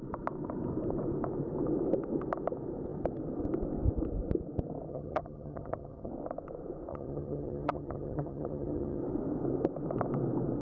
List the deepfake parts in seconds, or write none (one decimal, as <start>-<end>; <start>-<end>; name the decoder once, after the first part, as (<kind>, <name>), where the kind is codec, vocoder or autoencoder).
4.9-6.1 (vocoder, HiFi-GAN); 6.9-9.0